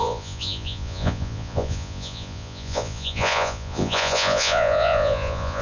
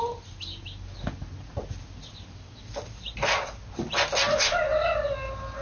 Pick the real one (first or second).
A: second